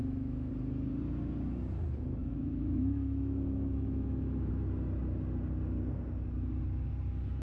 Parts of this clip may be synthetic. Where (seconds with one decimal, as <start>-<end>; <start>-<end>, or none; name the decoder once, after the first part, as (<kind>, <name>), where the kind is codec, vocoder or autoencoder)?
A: 0.0-0.5 (autoencoder, DAC-VAE); 2.2-4.5

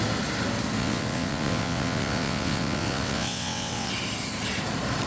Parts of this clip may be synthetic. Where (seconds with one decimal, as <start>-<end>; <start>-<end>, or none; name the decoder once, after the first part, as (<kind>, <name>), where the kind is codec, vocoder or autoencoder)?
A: 0.8-3.9 (vocoder, WaveNeXt)